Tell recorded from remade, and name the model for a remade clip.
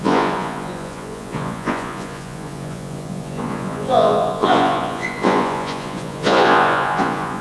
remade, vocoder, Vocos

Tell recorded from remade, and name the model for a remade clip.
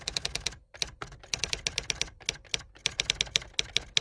remade, vocoder, BigVGAN v2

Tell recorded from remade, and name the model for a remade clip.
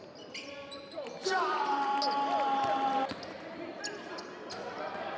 recorded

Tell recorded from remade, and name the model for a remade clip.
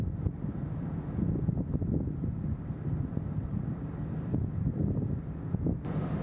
recorded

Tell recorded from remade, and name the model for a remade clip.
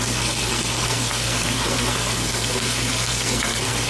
remade, codec, SNAC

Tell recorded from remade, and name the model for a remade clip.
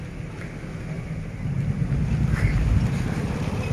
recorded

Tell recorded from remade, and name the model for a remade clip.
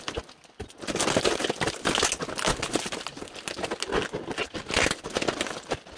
recorded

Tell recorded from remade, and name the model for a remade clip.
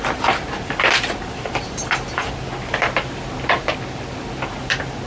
recorded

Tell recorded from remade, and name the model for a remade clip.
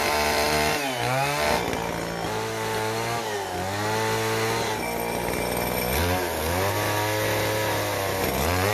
recorded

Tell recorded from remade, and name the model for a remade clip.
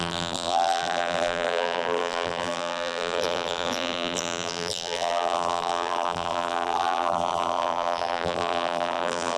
remade, vocoder, BigVGAN v2